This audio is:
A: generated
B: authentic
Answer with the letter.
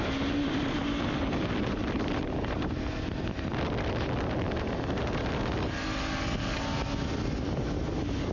B